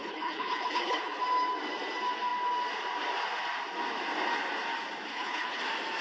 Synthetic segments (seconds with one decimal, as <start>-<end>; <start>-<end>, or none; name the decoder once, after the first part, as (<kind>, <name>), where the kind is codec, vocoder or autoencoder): 0.0-1.2 (codec, HILCodec); 5.1-5.6